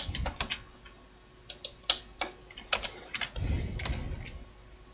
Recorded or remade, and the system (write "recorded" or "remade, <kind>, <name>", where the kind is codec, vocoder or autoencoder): recorded